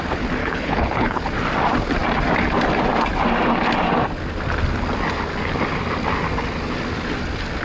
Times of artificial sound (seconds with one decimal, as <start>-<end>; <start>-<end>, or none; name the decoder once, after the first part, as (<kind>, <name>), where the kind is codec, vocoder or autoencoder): 0.4-1.2 (codec, HILCodec)